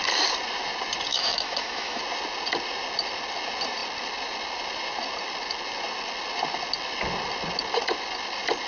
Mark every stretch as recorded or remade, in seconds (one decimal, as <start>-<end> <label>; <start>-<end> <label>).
0.0-1.1 recorded; 1.1-2.0 remade; 2.0-8.7 recorded